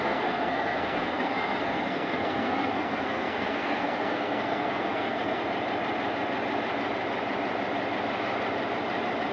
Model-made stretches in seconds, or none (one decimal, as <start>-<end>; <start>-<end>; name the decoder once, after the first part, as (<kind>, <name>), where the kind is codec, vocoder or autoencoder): 0.0-5.4 (codec, SNAC)